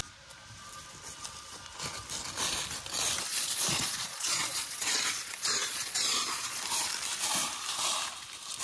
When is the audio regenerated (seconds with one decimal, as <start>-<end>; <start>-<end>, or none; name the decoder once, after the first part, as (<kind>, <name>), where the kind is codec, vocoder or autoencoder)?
3.3-6.6 (vocoder, Vocos)